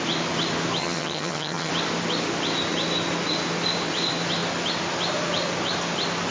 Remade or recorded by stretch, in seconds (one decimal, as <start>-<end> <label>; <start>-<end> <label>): 0.0-0.8 recorded; 0.8-1.7 remade; 1.7-6.3 recorded